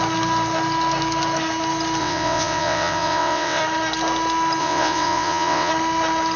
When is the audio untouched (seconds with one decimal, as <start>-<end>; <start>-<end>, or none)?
0.0-2.0; 3.6-4.6; 5.7-6.4